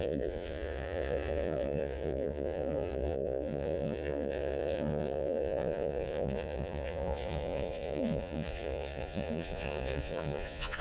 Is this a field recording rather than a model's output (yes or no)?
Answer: no